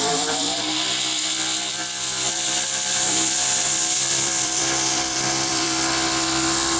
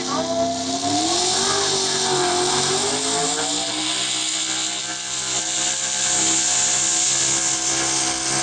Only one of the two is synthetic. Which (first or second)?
first